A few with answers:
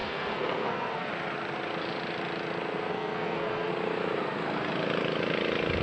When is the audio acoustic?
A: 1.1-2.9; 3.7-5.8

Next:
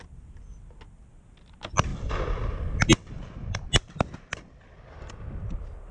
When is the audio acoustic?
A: 0.0-5.9

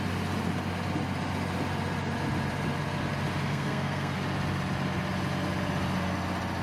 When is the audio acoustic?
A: 0.0-3.5; 4.1-6.6

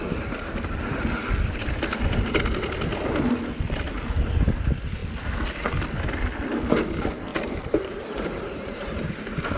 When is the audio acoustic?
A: 0.0-7.3; 9.1-9.6

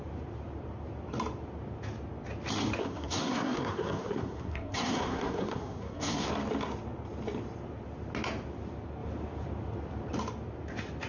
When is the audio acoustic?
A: 0.0-2.8; 6.3-11.1